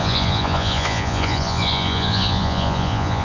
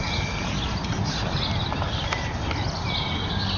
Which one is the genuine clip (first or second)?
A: second